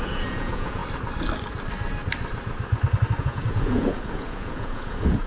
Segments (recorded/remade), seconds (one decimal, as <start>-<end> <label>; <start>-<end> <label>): 0.0-0.8 remade; 0.8-3.2 recorded; 3.2-5.3 remade